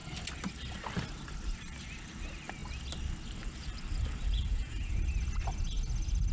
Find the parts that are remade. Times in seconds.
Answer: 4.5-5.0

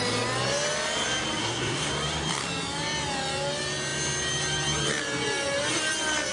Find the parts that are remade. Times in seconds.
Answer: 1.4-1.9

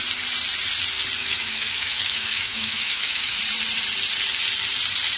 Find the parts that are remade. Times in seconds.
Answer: 1.2-3.4

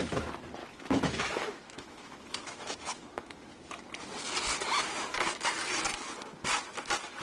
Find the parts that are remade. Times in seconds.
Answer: 0.6-3.8

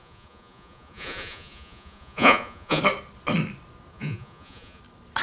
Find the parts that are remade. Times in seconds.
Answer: 0.0-2.8; 3.9-4.8